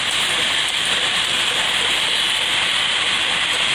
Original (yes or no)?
no